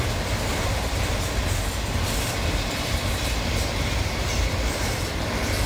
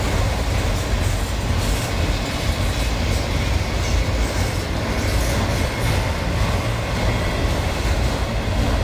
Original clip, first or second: second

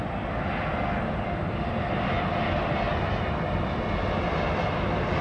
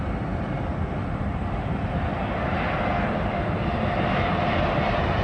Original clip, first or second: first